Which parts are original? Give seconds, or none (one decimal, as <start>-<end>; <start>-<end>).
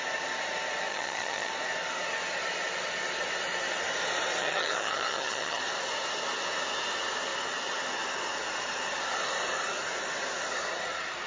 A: 0.0-0.9; 1.5-4.4; 5.6-11.3